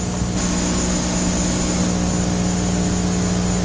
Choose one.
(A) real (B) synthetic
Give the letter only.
A